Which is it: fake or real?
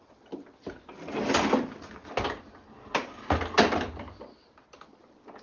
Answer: real